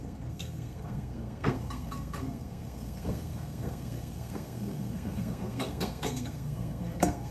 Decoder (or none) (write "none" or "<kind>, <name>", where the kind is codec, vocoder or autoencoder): codec, SNAC